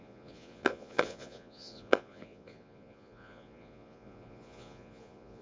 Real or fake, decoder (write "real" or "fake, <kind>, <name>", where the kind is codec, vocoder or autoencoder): fake, vocoder, Vocos